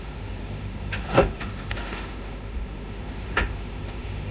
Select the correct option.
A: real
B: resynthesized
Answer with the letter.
B